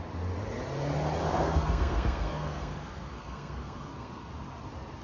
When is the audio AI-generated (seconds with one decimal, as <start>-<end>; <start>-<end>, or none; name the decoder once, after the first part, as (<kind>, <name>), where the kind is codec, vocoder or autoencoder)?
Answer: 1.3-4.3 (codec, SNAC)